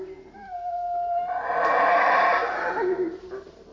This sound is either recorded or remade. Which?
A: recorded